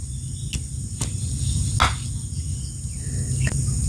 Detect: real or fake real